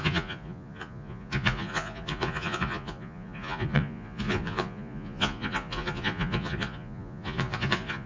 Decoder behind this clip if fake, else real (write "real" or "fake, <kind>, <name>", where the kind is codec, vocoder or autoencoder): fake, vocoder, Vocos